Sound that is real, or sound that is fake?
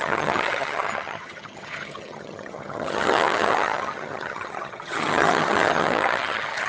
fake